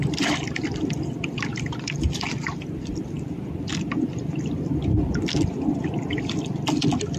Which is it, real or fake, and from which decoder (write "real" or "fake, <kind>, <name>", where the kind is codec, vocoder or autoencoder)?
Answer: fake, vocoder, BigVGAN v2